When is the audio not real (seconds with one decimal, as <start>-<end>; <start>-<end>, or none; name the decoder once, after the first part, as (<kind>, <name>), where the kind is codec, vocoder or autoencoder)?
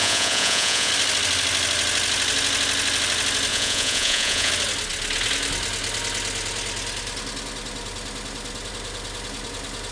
0.0-0.9 (vocoder, Vocos); 3.5-4.5